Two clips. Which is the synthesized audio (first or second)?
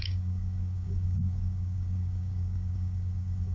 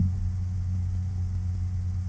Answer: first